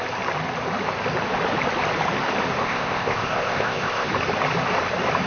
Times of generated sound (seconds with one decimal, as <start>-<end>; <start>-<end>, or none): 2.6-4.1